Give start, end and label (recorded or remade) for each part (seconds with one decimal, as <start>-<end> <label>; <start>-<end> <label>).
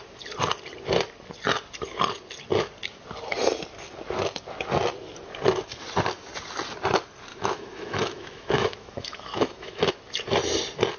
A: 0.0-7.3 recorded; 7.3-9.9 remade; 9.9-11.0 recorded